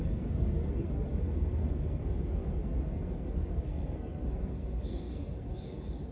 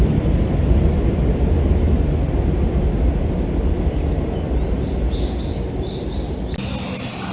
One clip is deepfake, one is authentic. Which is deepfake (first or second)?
first